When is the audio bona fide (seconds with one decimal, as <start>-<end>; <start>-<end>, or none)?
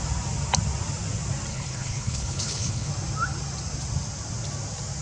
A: 0.0-1.5; 2.9-5.0